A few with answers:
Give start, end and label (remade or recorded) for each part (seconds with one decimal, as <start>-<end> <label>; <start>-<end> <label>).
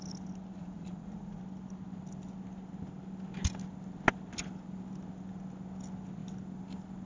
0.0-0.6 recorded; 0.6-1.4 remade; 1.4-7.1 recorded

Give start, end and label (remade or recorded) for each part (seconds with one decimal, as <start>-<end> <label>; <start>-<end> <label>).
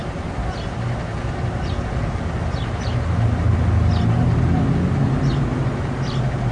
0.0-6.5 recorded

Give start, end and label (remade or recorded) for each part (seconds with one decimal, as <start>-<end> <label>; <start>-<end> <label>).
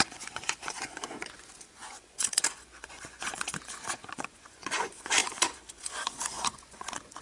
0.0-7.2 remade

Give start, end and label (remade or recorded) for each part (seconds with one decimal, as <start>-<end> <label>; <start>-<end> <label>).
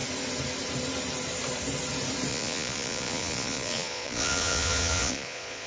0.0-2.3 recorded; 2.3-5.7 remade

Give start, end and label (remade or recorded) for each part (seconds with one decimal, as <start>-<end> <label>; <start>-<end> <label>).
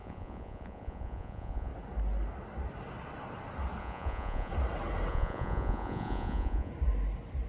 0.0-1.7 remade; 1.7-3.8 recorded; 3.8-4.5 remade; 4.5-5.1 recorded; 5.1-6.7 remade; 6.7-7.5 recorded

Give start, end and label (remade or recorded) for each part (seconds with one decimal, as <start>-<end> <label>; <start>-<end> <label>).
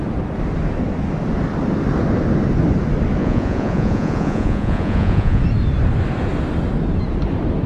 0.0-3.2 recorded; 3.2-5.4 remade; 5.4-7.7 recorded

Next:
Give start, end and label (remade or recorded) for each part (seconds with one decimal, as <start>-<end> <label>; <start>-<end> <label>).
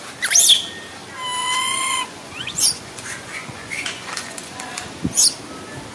0.0-1.4 recorded; 1.4-4.9 remade; 4.9-5.9 recorded